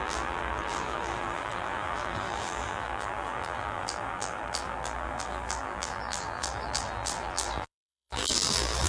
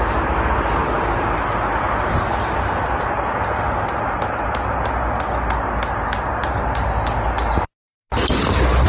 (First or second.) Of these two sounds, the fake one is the first